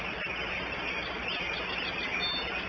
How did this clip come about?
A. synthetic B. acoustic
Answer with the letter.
B